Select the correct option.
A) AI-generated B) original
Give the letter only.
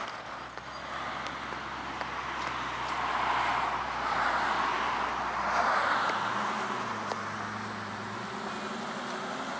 B